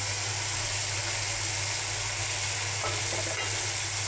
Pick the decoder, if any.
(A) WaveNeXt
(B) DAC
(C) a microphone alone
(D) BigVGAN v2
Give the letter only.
C